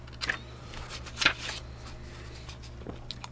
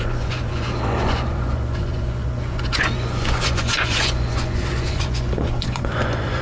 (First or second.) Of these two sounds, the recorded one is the first